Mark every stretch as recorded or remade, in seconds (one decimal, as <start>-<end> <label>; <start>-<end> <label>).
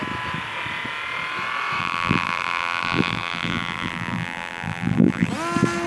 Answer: 0.0-1.8 recorded; 1.8-5.3 remade; 5.3-5.9 recorded